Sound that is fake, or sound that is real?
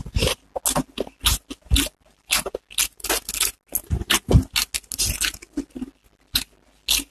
real